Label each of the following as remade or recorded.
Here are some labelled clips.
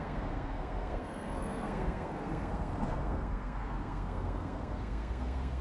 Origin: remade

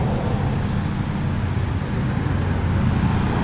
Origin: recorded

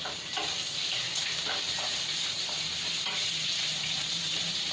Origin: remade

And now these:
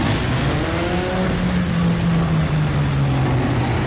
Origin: recorded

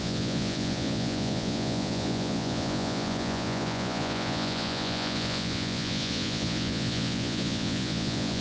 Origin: remade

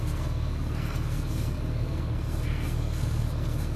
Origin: remade